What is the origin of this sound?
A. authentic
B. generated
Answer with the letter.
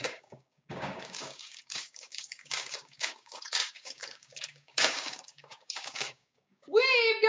B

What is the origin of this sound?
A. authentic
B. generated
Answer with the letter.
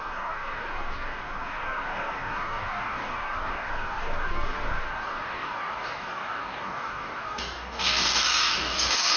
B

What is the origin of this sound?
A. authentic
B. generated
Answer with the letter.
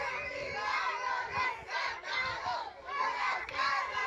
B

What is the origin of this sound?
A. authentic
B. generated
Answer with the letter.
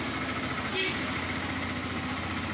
A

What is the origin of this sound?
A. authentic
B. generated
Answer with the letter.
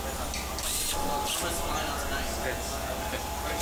A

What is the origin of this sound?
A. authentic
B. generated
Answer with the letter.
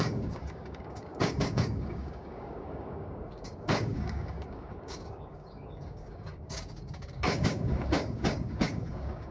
B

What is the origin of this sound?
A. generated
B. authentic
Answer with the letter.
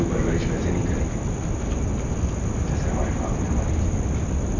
B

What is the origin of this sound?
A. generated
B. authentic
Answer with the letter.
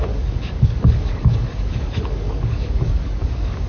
A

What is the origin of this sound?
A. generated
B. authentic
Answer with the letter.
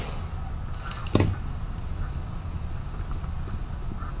B